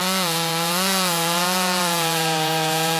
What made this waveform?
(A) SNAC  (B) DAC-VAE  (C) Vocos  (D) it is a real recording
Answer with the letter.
C